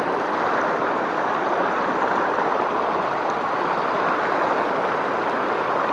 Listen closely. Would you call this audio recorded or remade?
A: recorded